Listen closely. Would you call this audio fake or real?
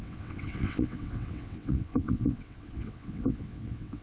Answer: fake